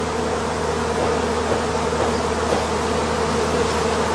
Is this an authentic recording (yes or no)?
yes